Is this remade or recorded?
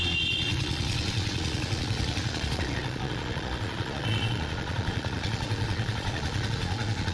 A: remade